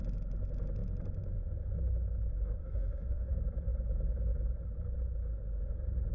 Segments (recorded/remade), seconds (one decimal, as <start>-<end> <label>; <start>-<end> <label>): 0.0-2.6 recorded; 2.6-3.3 remade; 3.3-6.1 recorded